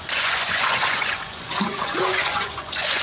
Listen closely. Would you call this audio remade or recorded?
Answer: remade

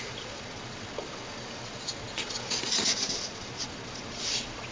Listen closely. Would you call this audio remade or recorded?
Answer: remade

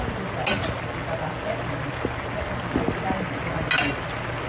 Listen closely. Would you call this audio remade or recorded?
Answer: recorded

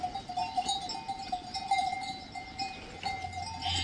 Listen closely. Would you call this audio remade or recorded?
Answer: recorded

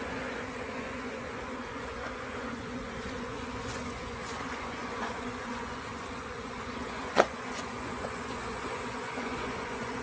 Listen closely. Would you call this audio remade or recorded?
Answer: remade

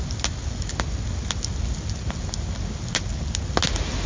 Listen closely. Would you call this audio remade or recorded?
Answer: recorded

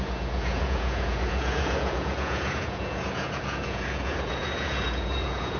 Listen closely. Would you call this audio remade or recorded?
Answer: remade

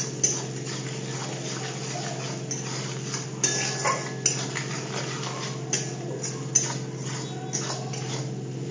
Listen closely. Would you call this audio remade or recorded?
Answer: recorded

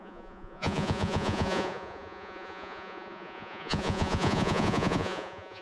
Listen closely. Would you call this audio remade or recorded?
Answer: remade